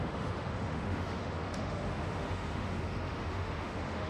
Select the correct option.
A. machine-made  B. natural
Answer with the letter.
A